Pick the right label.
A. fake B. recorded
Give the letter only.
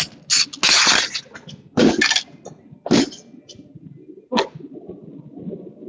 B